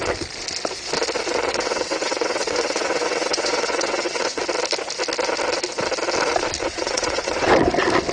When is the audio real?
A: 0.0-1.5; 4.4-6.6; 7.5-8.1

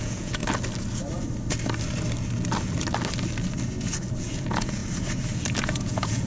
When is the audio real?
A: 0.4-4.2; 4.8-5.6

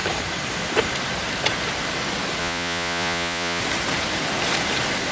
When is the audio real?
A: 0.0-2.4; 3.6-5.1